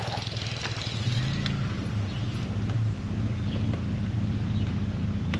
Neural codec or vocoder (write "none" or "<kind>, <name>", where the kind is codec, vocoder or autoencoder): none